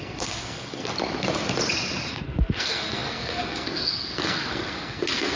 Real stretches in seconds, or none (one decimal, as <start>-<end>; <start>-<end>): 0.9-2.1